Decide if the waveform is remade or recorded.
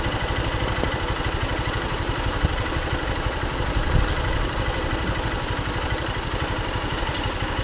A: remade